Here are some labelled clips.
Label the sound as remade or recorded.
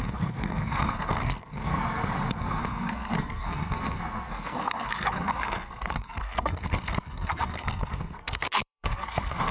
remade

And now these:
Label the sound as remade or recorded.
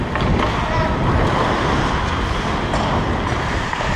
recorded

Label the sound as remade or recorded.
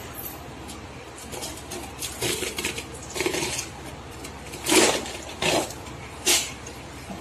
remade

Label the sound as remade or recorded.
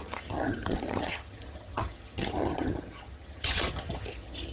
remade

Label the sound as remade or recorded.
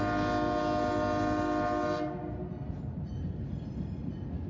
recorded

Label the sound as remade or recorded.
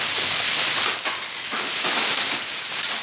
recorded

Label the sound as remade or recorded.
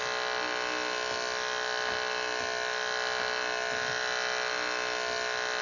recorded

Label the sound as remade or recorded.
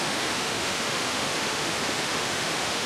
remade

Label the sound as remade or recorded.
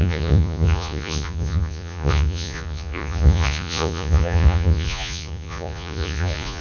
remade